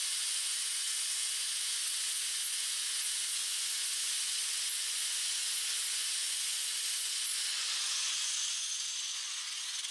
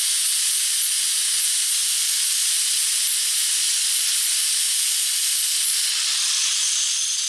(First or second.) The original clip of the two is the second